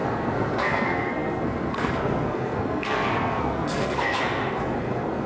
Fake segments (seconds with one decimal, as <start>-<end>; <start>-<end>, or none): 0.0-5.3